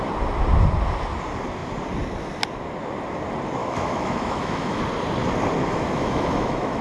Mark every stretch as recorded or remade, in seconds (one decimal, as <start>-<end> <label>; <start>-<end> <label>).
0.0-3.6 recorded; 3.6-4.8 remade; 4.8-5.6 recorded; 5.6-6.8 remade